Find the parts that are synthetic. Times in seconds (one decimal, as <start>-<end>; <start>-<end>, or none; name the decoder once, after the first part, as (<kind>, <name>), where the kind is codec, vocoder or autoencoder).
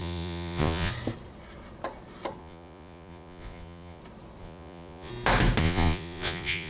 0.0-0.9 (vocoder, Vocos); 2.4-4.0; 4.4-5.1; 5.6-6.7